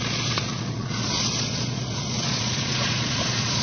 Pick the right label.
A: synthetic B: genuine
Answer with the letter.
A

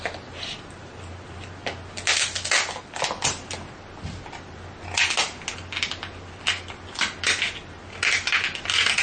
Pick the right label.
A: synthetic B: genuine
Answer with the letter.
B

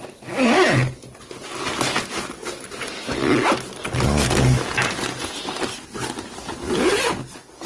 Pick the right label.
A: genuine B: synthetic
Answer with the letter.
A